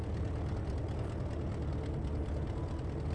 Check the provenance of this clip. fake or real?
real